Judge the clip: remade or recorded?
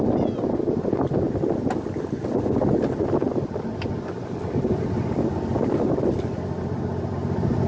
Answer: recorded